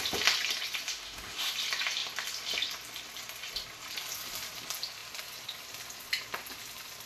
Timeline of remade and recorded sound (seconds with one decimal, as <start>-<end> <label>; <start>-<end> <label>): 0.0-0.9 recorded; 0.9-1.5 remade; 1.5-7.1 recorded